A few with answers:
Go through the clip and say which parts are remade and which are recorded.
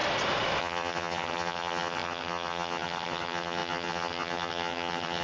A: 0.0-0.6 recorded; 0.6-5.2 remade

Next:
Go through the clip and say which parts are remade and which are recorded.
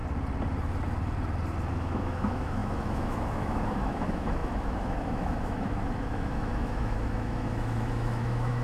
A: 0.0-1.7 recorded; 1.7-8.6 remade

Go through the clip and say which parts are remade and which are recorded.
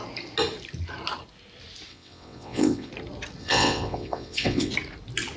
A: 0.0-1.9 recorded; 1.9-2.9 remade; 2.9-3.4 recorded; 3.4-4.7 remade; 4.7-5.4 recorded